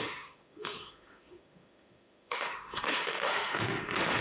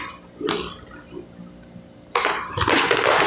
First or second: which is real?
second